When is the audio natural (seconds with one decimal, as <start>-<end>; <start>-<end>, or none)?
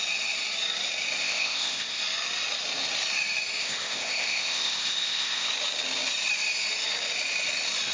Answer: 0.0-1.2; 2.0-3.6; 5.5-7.9